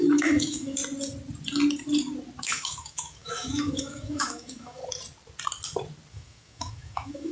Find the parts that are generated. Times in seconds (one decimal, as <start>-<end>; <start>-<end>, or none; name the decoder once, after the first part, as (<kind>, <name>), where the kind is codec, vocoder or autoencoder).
0.0-0.8 (autoencoder, DAC-VAE); 2.4-4.8; 6.1-7.3